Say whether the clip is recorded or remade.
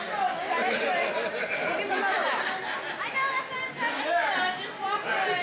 recorded